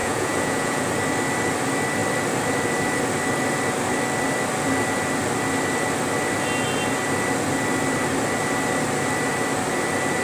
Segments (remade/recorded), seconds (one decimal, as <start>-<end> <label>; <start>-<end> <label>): 0.0-0.9 remade; 0.9-10.2 recorded

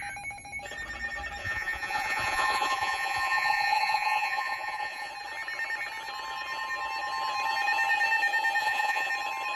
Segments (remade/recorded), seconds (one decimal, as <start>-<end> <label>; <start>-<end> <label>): 0.0-1.4 recorded; 1.4-5.1 remade; 5.1-8.6 recorded; 8.6-9.1 remade; 9.1-9.6 recorded

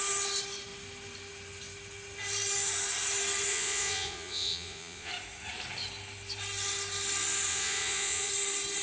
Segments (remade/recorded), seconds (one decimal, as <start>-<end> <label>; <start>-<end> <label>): 0.0-3.5 recorded; 3.5-5.1 remade; 5.1-7.5 recorded; 7.5-8.3 remade; 8.3-8.8 recorded

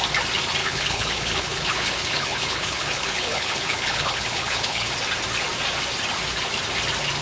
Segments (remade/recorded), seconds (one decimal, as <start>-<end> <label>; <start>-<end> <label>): 0.0-0.6 recorded; 0.6-4.9 remade; 4.9-7.2 recorded